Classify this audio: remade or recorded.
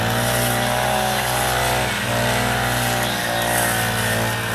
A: recorded